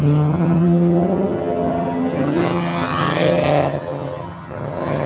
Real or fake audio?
fake